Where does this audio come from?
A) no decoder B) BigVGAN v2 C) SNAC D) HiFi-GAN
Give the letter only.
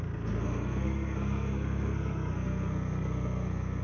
C